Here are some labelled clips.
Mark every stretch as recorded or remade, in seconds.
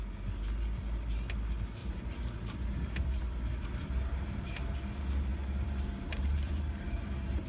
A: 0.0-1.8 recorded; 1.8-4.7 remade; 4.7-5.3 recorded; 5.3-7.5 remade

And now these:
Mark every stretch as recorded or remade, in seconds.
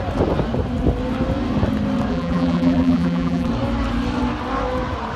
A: 0.0-2.1 recorded; 2.1-3.5 remade; 3.5-5.2 recorded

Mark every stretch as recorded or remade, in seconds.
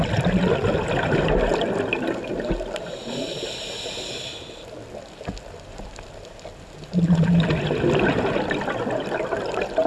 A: 0.0-9.9 recorded